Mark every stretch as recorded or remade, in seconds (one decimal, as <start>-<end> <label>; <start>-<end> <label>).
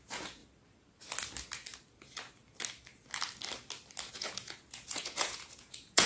0.0-0.4 remade; 0.4-4.1 recorded; 4.1-6.1 remade